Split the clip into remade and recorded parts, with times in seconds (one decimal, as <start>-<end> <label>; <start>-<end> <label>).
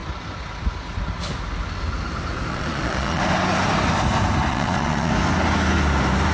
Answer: 0.0-2.5 recorded; 2.5-3.2 remade; 3.2-4.5 recorded; 4.5-5.1 remade; 5.1-6.3 recorded